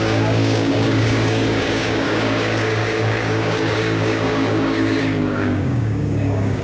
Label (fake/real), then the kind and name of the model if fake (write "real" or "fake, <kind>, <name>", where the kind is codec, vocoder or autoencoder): fake, codec, DAC